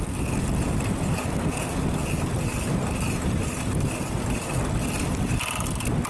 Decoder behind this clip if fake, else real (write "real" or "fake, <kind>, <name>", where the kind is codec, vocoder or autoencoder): real